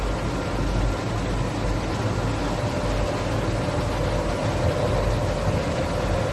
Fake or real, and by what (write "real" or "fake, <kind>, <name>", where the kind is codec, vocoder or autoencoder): real